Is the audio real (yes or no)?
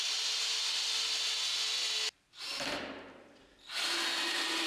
yes